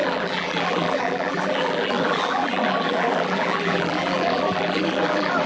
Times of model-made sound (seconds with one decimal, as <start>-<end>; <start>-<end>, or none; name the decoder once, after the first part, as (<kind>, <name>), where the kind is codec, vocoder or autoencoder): 0.0-5.5 (vocoder, BigVGAN v2)